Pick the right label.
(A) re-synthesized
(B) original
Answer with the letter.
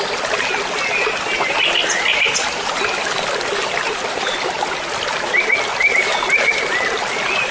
B